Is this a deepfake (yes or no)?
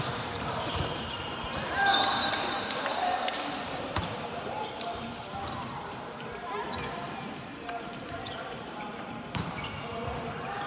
yes